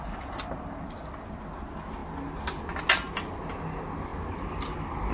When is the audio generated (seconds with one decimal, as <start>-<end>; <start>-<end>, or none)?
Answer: none

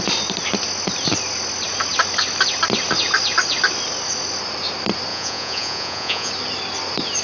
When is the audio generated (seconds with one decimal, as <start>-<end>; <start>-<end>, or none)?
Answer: 5.1-6.3

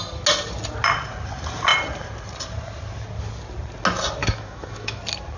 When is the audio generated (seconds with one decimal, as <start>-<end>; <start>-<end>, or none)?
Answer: 4.2-5.0

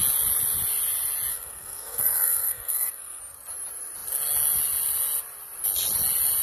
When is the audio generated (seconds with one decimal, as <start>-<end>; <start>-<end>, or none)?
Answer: 1.3-3.2